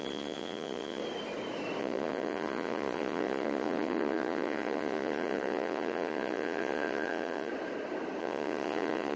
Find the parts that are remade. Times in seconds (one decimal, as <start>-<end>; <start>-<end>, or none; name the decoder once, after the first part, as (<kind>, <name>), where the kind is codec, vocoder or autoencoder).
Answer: 0.0-1.0 (vocoder, Vocos); 1.8-7.5; 8.2-9.2